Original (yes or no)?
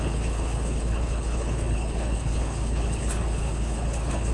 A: no